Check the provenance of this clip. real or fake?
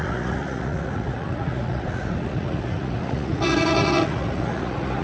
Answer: fake